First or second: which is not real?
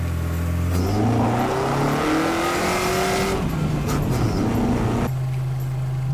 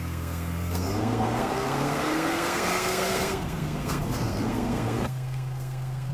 second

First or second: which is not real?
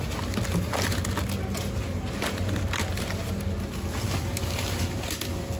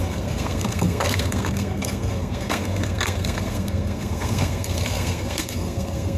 second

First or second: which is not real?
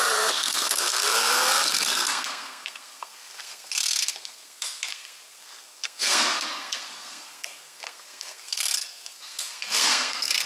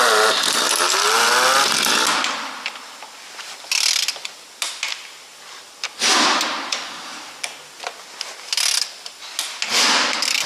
first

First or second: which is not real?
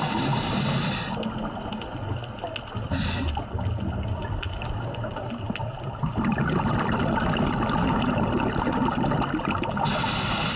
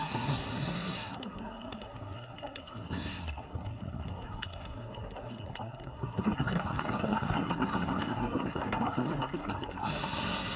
second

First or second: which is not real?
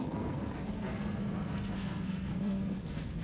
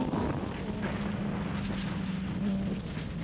first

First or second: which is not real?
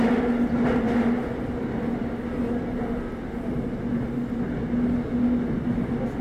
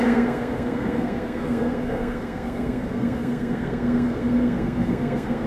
second